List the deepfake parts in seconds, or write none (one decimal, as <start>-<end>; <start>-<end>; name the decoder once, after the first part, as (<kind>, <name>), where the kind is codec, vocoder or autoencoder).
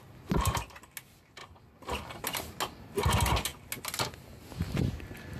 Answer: none